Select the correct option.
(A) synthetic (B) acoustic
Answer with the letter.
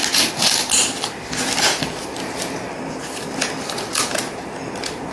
B